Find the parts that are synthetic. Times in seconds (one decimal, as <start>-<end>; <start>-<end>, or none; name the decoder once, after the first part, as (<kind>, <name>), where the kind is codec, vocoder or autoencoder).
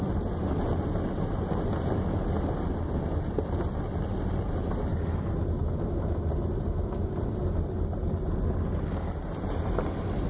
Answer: none